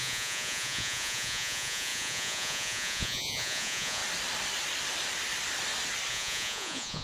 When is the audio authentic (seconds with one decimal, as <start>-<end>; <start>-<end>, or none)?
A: 4.0-6.1